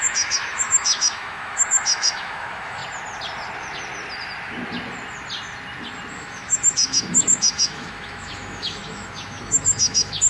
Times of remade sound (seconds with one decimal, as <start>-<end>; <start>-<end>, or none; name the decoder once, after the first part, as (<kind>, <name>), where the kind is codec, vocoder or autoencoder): 0.0-2.8 (autoencoder, DAC-VAE); 6.1-10.3